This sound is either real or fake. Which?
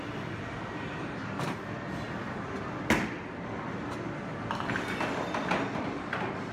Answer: real